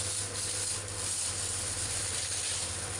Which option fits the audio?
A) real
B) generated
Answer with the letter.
A